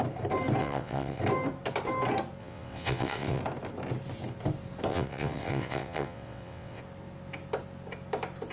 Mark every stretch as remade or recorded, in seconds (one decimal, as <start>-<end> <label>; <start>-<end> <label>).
0.0-0.6 recorded; 0.6-1.2 remade; 1.2-2.4 recorded; 2.4-3.4 remade; 3.4-4.9 recorded; 4.9-6.8 remade; 6.8-8.5 recorded